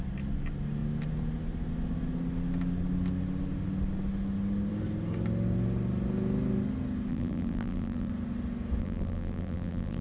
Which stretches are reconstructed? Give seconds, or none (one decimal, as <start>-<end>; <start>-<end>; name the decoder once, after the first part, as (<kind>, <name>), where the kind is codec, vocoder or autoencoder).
7.1-8.1 (vocoder, BigVGAN v2); 8.8-10.0